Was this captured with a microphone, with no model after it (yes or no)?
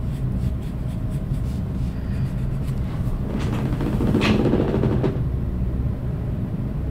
no